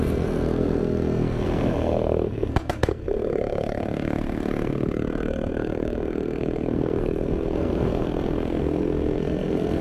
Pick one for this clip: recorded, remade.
remade